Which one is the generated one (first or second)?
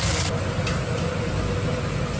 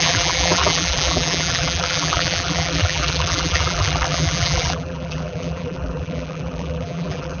second